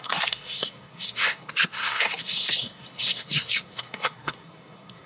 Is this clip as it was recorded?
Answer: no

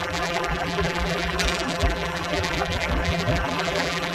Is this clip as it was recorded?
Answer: no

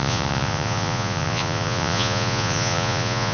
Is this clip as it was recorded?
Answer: no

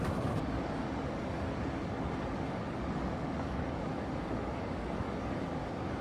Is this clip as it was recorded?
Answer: no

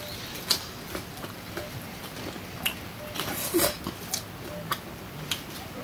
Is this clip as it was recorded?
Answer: yes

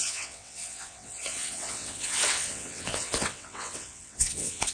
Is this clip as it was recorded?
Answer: no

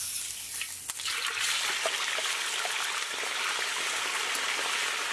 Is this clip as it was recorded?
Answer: yes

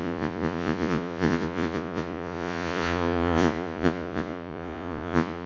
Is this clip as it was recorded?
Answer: no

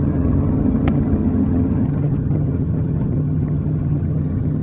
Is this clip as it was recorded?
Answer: no